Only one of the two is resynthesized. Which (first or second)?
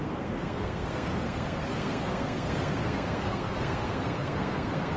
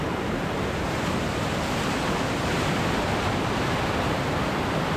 first